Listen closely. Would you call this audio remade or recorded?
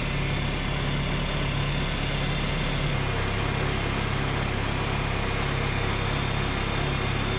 recorded